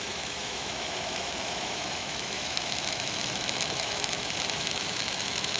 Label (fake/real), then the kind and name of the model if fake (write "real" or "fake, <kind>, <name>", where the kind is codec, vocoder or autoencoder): fake, autoencoder, DAC-VAE